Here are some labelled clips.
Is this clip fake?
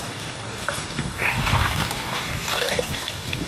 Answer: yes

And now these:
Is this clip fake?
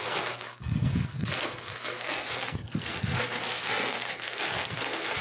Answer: yes